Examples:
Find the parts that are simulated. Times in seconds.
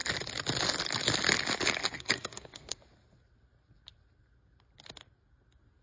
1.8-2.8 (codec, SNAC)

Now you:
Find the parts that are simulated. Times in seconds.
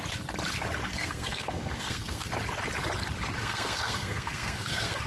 0.9-2.3 (codec, SNAC); 3.4-5.1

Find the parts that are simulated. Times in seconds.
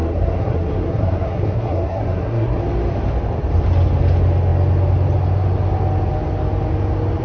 0.0-2.6 (codec, SNAC)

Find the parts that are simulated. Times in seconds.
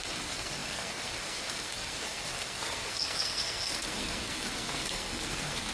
0.0-5.7 (codec, SNAC)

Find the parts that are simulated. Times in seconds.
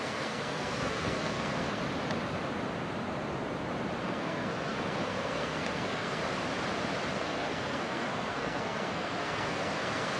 0.0-1.8 (codec, SNAC); 4.0-6.2; 7.1-10.2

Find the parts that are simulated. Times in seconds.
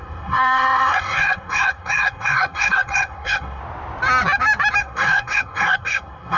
0.0-3.6 (codec, SNAC); 4.8-6.4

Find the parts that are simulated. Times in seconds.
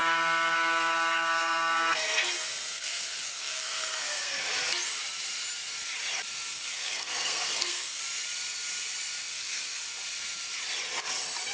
0.0-4.5 (codec, SNAC); 6.5-8.0; 9.3-9.8